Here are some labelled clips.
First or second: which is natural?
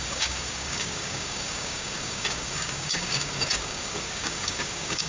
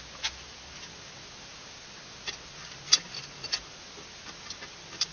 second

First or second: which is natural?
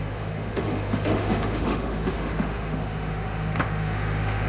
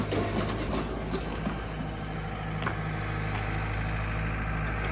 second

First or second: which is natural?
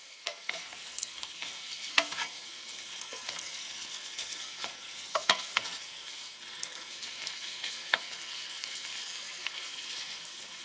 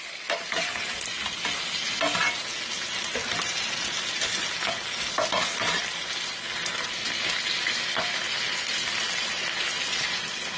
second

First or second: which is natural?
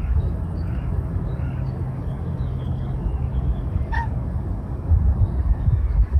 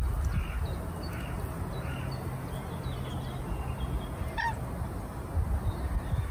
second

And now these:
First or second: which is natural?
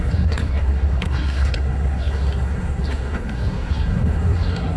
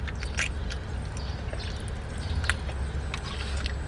second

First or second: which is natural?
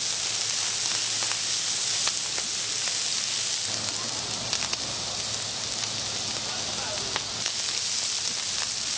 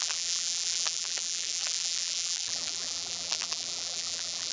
first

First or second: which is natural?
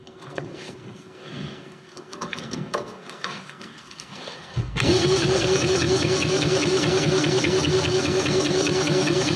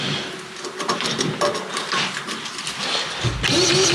second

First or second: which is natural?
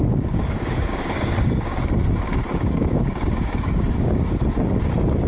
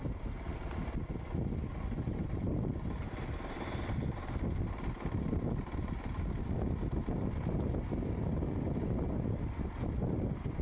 second